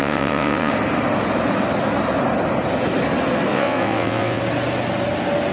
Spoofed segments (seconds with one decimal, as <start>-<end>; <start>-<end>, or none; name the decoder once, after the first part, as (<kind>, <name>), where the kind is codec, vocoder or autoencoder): 0.0-0.7 (vocoder, WaveNeXt); 3.5-4.4